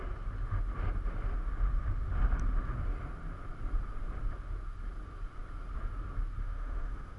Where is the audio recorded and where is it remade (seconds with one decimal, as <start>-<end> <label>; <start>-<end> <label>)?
0.0-6.4 recorded; 6.4-7.2 remade